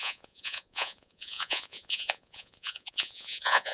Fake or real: fake